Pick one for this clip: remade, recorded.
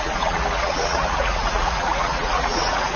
remade